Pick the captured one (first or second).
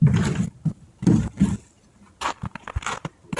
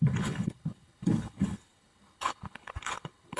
first